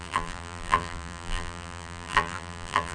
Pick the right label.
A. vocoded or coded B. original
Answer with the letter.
A